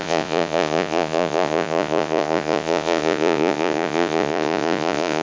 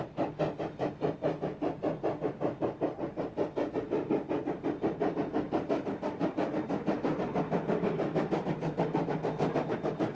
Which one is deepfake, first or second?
first